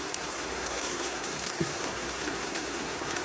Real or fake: fake